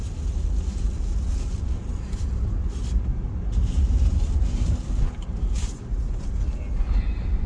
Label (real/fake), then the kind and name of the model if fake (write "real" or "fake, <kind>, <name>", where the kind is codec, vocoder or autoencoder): real